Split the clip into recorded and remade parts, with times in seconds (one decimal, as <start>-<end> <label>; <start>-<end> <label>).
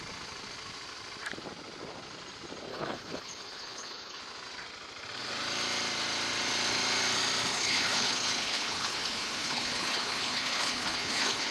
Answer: 0.0-2.7 recorded; 2.7-4.2 remade; 4.2-7.5 recorded; 7.5-11.5 remade